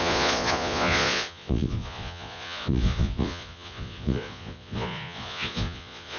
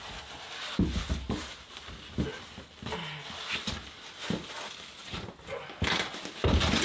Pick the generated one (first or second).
first